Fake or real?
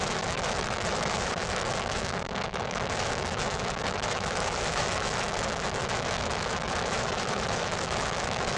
fake